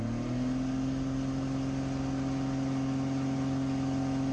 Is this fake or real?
real